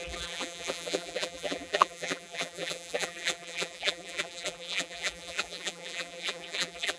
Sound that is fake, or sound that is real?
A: fake